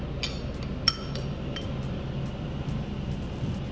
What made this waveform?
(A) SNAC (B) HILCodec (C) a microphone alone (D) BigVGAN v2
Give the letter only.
C